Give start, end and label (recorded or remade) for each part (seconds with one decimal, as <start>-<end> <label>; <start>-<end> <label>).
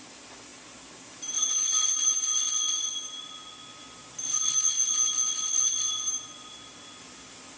0.0-7.6 recorded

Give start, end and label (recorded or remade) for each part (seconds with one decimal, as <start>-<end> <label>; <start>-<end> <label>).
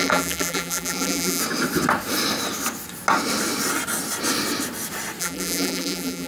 0.0-1.4 remade; 1.4-5.2 recorded; 5.2-6.3 remade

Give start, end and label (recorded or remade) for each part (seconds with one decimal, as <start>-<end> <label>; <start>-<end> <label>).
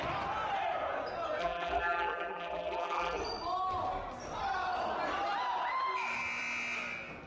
0.0-1.4 recorded; 1.4-3.2 remade; 3.2-7.3 recorded